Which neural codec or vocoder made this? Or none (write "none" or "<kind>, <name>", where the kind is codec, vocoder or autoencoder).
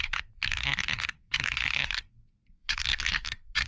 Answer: codec, SNAC